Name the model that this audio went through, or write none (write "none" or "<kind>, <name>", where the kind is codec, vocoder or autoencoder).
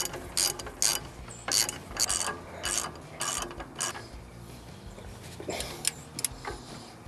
none